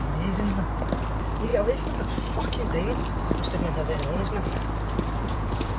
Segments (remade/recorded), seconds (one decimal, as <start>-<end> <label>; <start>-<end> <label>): 0.0-5.2 recorded; 5.2-5.8 remade